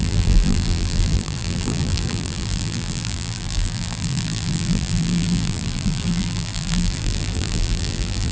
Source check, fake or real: fake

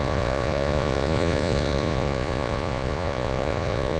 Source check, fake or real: fake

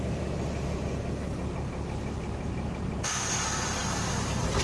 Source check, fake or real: real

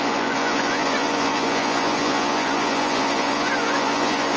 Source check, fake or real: fake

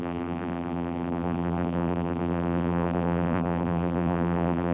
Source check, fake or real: fake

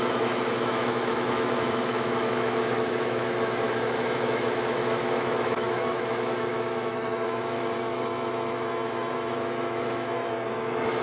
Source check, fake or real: fake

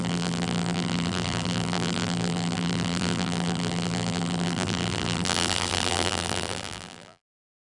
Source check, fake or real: fake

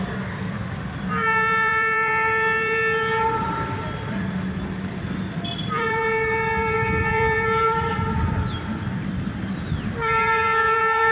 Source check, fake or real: fake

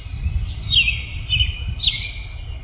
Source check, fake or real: real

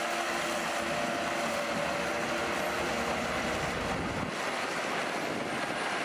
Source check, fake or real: real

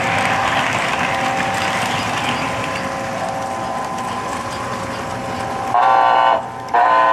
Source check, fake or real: real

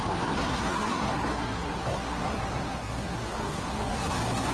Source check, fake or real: fake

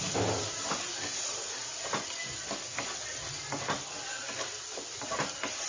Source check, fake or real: real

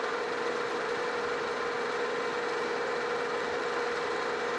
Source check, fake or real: real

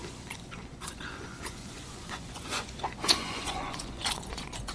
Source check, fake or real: fake